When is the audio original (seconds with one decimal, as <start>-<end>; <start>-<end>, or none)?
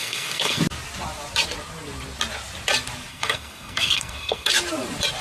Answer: 0.6-3.1; 4.5-5.2